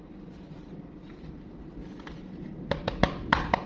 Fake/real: real